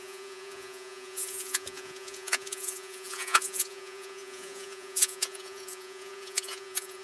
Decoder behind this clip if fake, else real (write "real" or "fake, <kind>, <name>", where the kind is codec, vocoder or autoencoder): fake, vocoder, Vocos